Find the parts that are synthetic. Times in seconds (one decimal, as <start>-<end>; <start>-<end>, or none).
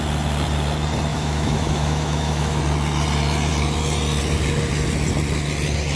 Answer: 1.1-2.6